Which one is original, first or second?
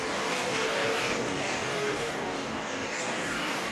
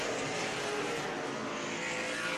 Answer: second